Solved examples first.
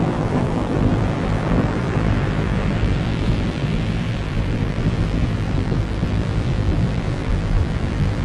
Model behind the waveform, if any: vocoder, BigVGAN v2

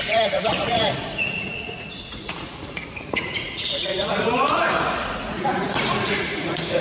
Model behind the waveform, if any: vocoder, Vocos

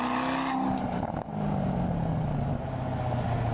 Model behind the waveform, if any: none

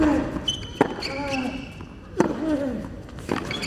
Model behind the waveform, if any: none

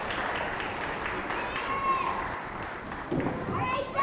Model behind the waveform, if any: none